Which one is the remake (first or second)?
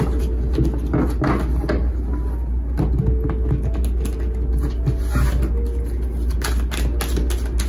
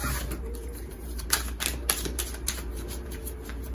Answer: second